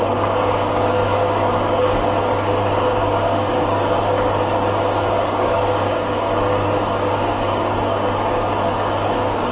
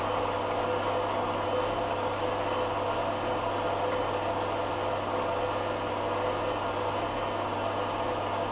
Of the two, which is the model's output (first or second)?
first